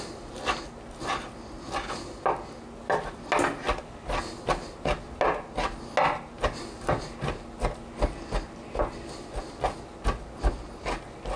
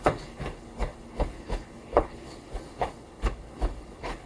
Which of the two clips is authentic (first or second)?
first